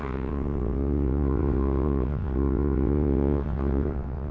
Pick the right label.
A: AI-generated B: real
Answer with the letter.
A